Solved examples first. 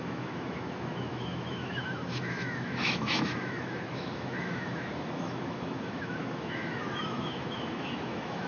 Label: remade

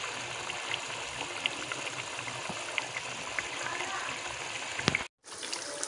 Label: recorded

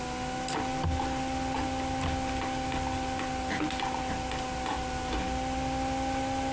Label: recorded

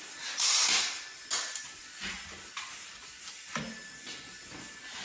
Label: recorded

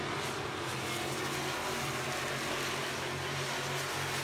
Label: recorded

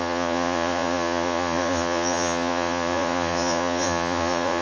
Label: remade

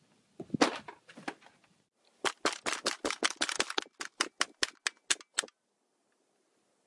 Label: recorded